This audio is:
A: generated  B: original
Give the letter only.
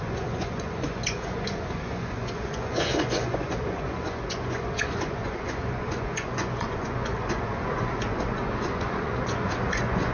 A